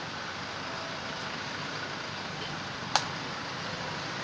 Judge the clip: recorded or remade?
recorded